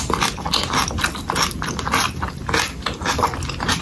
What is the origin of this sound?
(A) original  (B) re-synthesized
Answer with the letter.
A